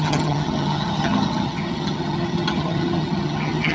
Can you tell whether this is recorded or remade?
remade